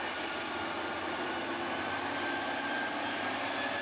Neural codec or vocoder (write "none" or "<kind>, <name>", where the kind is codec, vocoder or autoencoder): none